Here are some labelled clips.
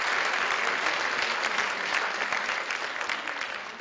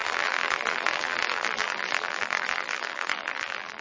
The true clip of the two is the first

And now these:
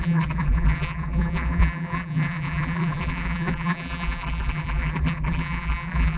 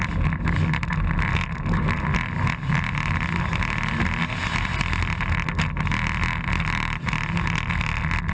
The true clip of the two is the second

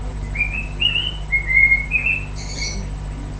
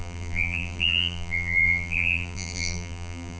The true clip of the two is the first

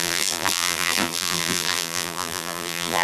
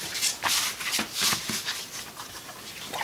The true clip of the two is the second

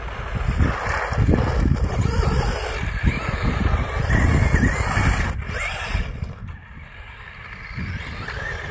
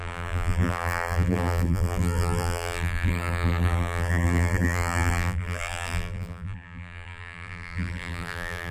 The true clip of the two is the first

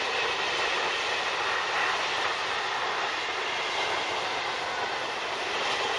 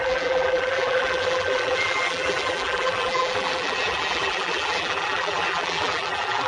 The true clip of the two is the first